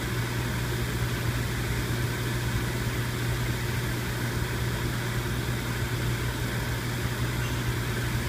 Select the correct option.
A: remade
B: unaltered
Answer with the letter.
B